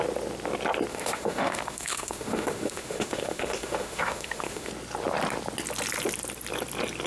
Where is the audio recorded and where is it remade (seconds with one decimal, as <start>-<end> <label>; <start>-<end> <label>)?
0.0-0.9 recorded; 0.9-4.7 remade; 4.7-7.1 recorded

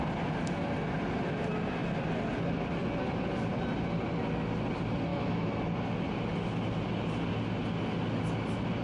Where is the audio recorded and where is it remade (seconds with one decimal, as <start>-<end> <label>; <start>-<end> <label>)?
0.0-5.1 recorded; 5.1-5.6 remade; 5.6-8.8 recorded